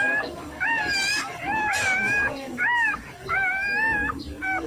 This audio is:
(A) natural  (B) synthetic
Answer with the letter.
B